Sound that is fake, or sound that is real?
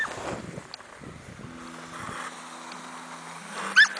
real